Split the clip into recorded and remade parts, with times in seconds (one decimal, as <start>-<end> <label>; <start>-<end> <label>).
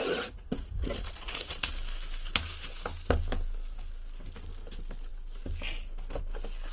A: 0.0-1.7 remade; 1.7-6.7 recorded